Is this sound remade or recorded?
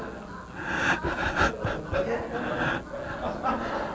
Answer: recorded